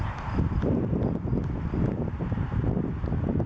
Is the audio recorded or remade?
recorded